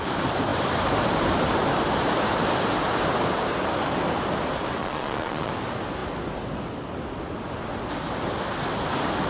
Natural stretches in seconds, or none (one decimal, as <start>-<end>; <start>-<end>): 0.0-4.8; 5.5-9.3